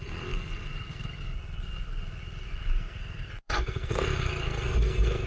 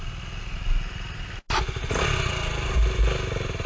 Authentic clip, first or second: second